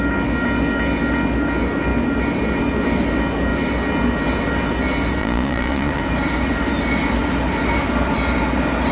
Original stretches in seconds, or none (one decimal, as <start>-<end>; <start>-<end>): 0.0-5.2; 6.0-8.9